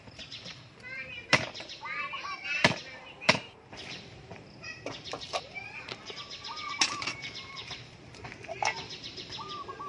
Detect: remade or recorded remade